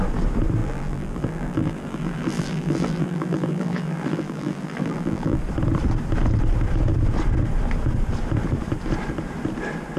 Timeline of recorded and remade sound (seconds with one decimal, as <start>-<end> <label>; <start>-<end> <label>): 0.0-0.6 recorded; 0.6-5.4 remade; 5.4-10.0 recorded